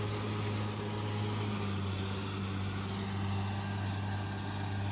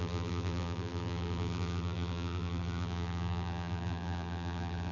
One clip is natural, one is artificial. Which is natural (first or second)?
first